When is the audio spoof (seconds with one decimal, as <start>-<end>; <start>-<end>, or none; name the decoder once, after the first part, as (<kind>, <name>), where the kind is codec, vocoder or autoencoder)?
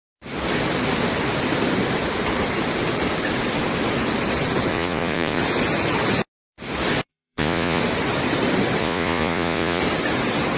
4.7-5.4 (vocoder, Vocos); 7.1-7.8; 8.8-9.8